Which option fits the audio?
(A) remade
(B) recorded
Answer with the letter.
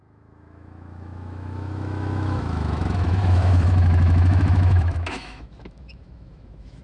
A